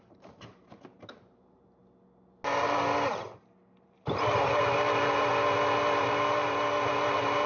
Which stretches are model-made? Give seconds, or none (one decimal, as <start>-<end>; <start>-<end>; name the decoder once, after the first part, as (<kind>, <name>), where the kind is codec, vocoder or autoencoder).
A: 0.0-1.8 (vocoder, BigVGAN v2); 3.8-5.3; 6.0-7.5

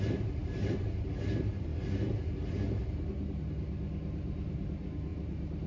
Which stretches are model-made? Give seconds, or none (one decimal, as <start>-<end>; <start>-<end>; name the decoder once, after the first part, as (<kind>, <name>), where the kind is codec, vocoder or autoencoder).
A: 0.4-1.1 (vocoder, BigVGAN v2); 5.1-5.7

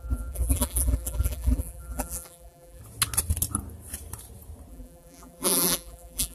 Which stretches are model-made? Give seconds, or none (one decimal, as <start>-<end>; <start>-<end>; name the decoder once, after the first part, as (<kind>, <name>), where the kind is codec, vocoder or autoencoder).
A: 0.0-2.8 (vocoder, BigVGAN v2); 4.7-6.3

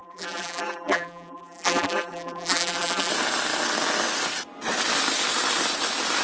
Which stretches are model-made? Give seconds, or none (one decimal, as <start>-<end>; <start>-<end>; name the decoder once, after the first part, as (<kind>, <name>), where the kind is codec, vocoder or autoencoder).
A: 0.0-3.1 (vocoder, BigVGAN v2)